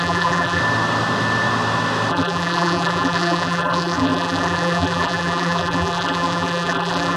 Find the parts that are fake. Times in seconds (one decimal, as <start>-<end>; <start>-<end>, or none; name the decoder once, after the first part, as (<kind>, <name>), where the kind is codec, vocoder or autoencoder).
0.0-0.6 (vocoder, BigVGAN v2); 2.1-7.2